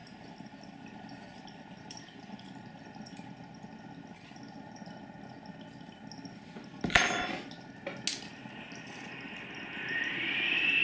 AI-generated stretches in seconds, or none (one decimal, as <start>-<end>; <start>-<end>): 0.0-3.3